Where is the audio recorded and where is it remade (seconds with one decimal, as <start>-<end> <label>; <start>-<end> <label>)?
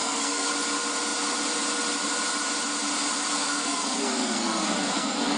0.0-0.5 remade; 0.5-3.4 recorded; 3.4-5.4 remade